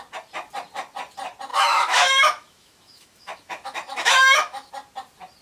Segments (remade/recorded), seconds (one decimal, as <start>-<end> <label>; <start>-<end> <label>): 0.0-1.5 recorded; 1.5-4.7 remade; 4.7-5.4 recorded